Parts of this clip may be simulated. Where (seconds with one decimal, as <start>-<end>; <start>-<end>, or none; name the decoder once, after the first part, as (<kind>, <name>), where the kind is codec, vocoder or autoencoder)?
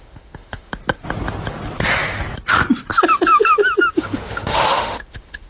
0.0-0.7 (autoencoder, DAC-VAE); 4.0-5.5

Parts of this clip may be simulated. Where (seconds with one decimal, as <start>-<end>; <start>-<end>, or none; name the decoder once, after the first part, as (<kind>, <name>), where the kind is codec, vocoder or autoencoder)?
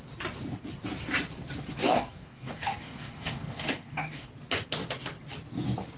1.8-4.3 (codec, DAC)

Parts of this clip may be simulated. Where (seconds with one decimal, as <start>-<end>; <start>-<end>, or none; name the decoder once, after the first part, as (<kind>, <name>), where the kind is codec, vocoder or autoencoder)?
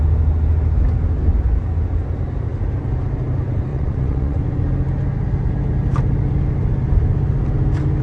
3.7-4.4 (vocoder, WaveNeXt)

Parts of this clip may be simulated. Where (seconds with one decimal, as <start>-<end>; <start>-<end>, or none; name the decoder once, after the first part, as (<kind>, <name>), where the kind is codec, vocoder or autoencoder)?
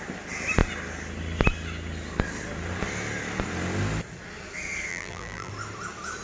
4.9-5.5 (vocoder, BigVGAN v2)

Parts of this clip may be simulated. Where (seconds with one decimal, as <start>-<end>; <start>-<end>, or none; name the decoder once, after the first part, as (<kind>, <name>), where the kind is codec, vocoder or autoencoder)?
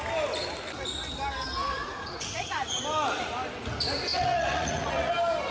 1.8-2.8 (vocoder, Vocos); 4.1-5.1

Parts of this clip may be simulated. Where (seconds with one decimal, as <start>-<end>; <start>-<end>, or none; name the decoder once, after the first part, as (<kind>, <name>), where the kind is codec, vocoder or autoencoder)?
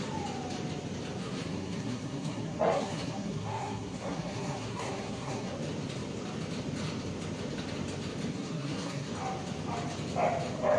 1.2-5.5 (codec, SNAC); 8.3-9.1